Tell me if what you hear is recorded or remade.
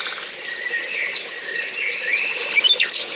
recorded